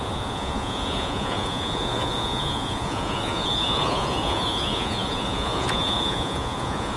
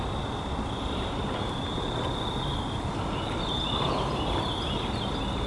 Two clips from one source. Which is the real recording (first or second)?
second